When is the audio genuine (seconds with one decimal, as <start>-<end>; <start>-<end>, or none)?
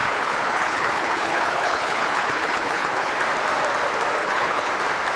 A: 3.1-4.2; 4.7-5.2